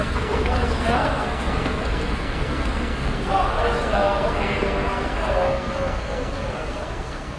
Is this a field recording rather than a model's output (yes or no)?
no